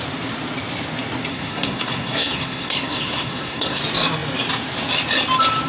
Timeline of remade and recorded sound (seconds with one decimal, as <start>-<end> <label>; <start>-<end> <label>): 0.0-1.3 recorded; 1.3-3.8 remade; 3.8-5.7 recorded